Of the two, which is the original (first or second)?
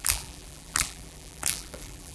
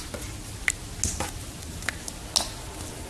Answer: second